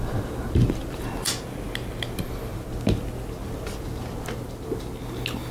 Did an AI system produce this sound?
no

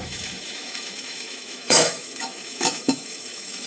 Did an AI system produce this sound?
yes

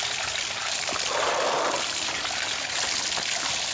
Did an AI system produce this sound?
no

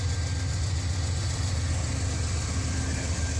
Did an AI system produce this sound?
no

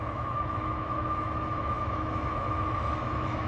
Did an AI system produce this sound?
yes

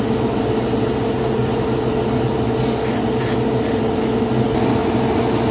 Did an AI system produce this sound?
no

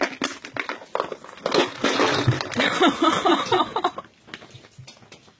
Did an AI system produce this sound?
no